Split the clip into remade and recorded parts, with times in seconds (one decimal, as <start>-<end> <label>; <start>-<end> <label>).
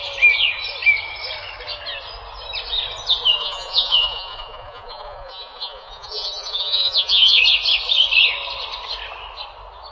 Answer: 0.0-3.4 recorded; 3.4-7.4 remade; 7.4-9.9 recorded